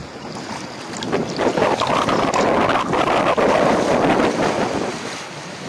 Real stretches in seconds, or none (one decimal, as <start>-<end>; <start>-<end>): 0.0-0.6; 1.2-4.6